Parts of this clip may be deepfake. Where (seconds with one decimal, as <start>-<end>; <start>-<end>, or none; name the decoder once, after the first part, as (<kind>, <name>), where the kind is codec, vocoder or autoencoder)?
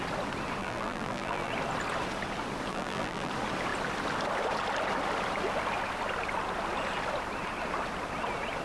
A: 0.6-1.5 (vocoder, BigVGAN v2); 2.7-3.3